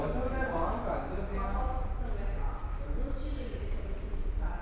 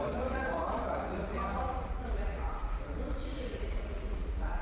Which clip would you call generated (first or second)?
second